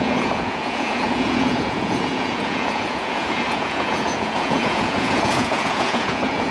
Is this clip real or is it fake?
fake